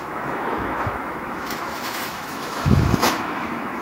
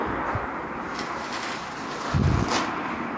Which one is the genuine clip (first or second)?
second